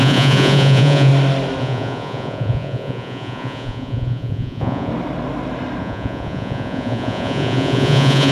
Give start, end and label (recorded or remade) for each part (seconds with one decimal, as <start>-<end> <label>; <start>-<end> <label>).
0.0-1.1 remade; 1.1-1.6 recorded; 1.6-4.9 remade; 4.9-5.8 recorded; 5.8-8.3 remade